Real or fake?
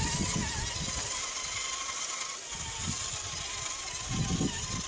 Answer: real